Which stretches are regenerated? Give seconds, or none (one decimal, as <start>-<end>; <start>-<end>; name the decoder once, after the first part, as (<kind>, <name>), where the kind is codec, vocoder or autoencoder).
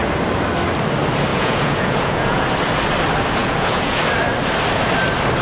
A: 1.3-2.5 (vocoder, Vocos); 3.4-4.0